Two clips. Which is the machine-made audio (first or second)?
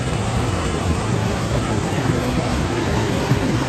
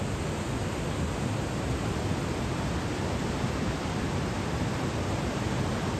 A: first